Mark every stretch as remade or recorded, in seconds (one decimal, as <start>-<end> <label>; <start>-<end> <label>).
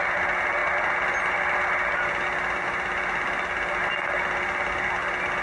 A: 0.0-5.4 recorded